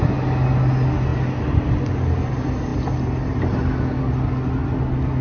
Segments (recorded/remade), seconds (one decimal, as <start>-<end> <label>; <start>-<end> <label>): 0.0-5.2 recorded